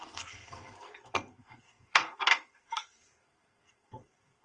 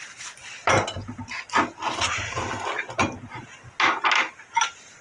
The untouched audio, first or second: second